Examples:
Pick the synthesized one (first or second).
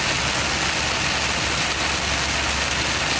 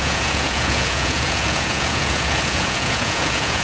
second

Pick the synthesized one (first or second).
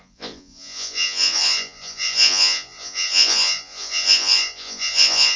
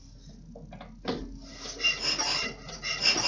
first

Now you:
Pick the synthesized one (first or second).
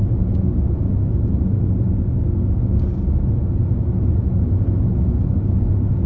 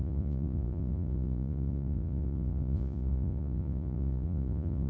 second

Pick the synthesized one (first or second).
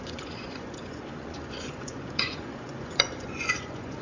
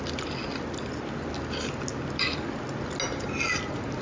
first